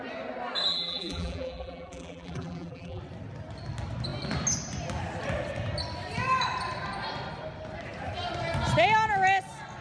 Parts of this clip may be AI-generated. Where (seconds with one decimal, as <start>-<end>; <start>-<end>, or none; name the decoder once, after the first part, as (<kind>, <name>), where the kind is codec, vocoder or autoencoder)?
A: 0.7-3.0 (vocoder, BigVGAN v2)